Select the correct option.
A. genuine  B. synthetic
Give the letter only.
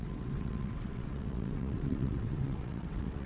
B